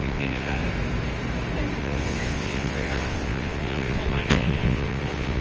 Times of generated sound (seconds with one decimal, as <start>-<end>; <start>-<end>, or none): 0.0-0.6; 1.8-5.4